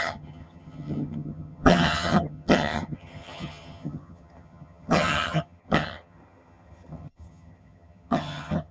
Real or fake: fake